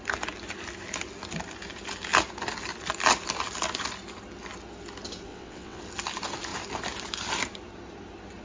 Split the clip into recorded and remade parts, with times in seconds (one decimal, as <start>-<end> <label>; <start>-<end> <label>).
0.0-5.3 recorded; 5.3-5.8 remade; 5.8-8.4 recorded